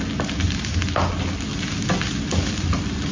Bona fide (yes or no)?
yes